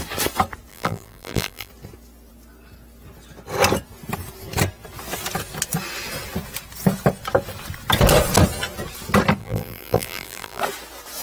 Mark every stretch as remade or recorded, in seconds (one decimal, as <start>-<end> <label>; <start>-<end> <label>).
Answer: 0.0-0.7 recorded; 0.7-1.7 remade; 1.7-9.4 recorded; 9.4-10.6 remade; 10.6-11.2 recorded